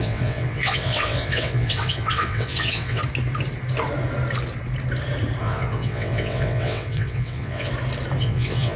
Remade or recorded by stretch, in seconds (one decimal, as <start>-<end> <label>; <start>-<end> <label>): 0.0-3.0 remade; 3.0-5.4 recorded; 5.4-7.7 remade; 7.7-8.2 recorded; 8.2-8.8 remade